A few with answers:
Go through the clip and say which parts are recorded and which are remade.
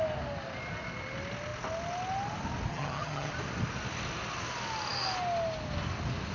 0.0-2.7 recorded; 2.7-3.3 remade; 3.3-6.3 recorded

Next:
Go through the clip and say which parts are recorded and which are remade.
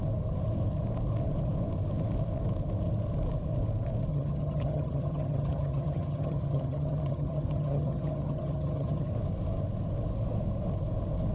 0.0-4.1 recorded; 4.1-9.1 remade; 9.1-11.3 recorded